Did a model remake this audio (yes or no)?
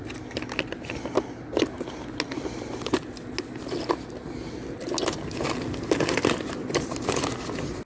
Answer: no